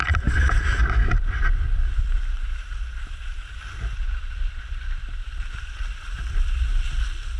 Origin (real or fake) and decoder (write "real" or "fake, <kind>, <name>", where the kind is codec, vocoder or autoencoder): fake, vocoder, BigVGAN v2